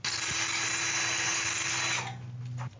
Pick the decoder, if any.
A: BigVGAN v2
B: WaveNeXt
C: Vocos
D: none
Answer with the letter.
D